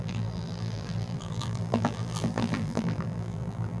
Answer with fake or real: fake